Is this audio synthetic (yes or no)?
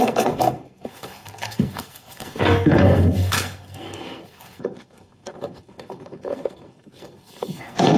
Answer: yes